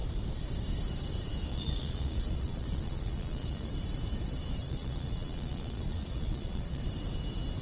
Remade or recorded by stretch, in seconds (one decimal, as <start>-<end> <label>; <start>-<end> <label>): 0.0-1.5 recorded; 1.5-3.7 remade; 3.7-4.6 recorded; 4.6-6.8 remade; 6.8-7.6 recorded

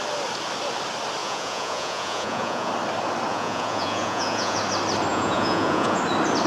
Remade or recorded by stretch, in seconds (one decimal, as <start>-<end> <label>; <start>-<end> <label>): 0.0-1.2 recorded; 1.2-2.7 remade; 2.7-3.3 recorded; 3.3-4.6 remade; 4.6-5.1 recorded; 5.1-6.0 remade; 6.0-6.5 recorded

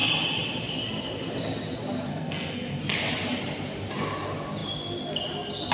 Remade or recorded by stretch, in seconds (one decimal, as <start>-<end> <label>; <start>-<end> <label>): 0.0-2.1 recorded; 2.1-2.8 remade; 2.8-5.7 recorded

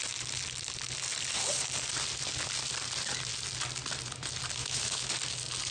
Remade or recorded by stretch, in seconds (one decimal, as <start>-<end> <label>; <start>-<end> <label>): 0.0-4.6 recorded; 4.6-5.1 remade; 5.1-5.7 recorded